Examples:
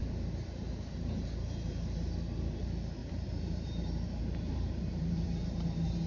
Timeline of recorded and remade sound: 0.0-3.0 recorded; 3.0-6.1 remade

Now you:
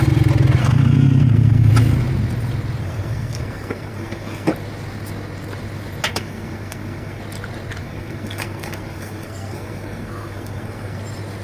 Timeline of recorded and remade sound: 0.0-0.6 recorded; 0.6-1.7 remade; 1.7-2.8 recorded; 2.8-4.5 remade; 4.5-6.1 recorded; 6.1-7.2 remade; 7.2-7.8 recorded; 7.8-11.0 remade; 11.0-11.4 recorded

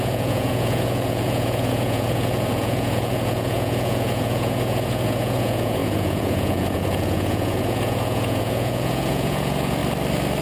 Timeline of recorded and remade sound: 0.0-9.8 remade; 9.8-10.4 recorded